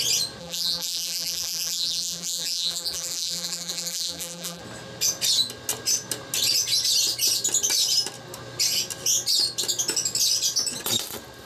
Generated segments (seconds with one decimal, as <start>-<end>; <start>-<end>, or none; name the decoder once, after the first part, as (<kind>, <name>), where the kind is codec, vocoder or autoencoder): 0.4-4.6 (vocoder, BigVGAN v2)